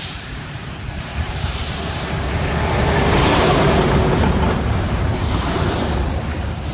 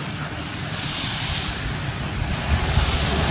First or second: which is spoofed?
first